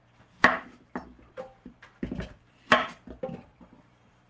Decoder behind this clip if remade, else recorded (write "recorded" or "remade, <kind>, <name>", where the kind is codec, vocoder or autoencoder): remade, vocoder, BigVGAN v2